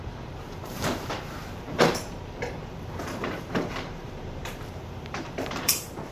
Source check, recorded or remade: remade